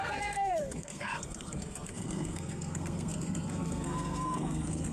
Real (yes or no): no